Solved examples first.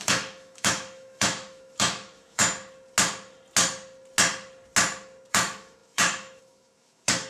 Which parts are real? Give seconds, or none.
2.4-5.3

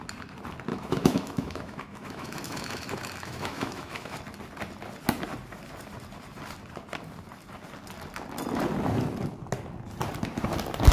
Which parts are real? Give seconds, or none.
0.0-0.7; 4.2-10.9

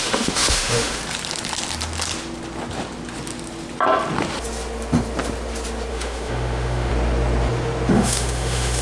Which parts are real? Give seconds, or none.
1.0-5.9; 6.9-7.9

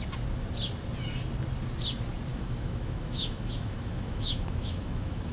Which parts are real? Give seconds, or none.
0.0-2.3

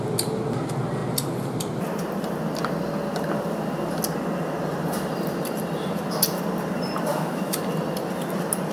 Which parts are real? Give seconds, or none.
0.0-7.1; 7.6-8.7

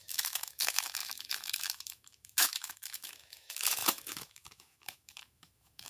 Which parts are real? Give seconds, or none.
none